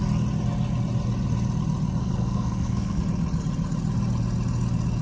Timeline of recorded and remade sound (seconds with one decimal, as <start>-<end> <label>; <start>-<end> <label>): 0.0-2.0 recorded; 2.0-3.0 remade; 3.0-5.0 recorded